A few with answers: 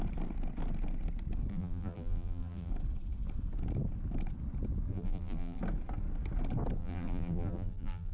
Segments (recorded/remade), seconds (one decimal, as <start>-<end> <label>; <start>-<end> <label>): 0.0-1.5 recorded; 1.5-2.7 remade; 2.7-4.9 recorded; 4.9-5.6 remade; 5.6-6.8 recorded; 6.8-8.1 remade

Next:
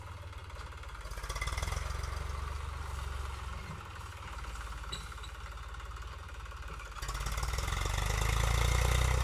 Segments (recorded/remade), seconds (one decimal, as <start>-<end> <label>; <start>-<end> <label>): 0.0-9.2 recorded

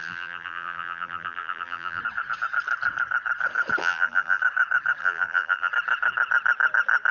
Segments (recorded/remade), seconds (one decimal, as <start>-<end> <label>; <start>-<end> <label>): 0.0-2.0 remade; 2.0-3.8 recorded; 3.8-4.4 remade; 4.4-5.0 recorded; 5.0-5.7 remade; 5.7-7.1 recorded

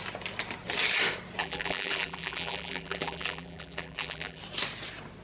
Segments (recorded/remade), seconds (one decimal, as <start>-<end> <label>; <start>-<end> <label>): 0.0-1.4 recorded; 1.4-4.4 remade; 4.4-5.2 recorded

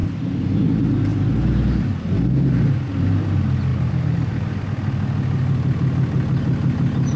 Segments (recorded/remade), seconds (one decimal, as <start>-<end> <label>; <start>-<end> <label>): 0.0-0.7 remade; 0.7-3.7 recorded; 3.7-4.6 remade; 4.6-7.2 recorded

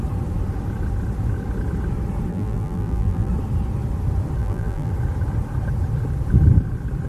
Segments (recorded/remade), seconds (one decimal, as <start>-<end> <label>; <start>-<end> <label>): 0.0-2.3 recorded; 2.3-3.3 remade; 3.3-4.4 recorded; 4.4-4.9 remade; 4.9-7.1 recorded

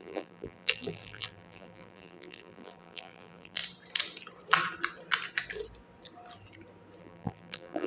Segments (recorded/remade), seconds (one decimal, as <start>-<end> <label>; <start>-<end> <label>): 0.0-3.6 remade; 3.6-7.0 recorded; 7.0-7.9 remade

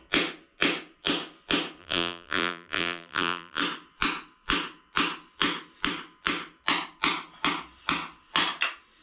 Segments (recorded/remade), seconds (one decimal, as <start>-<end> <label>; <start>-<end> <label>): 0.0-1.8 recorded; 1.8-3.6 remade; 3.6-9.0 recorded